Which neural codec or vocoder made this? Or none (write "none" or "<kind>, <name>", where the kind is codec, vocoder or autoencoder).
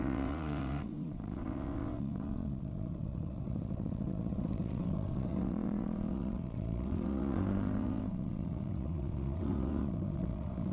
vocoder, WaveNeXt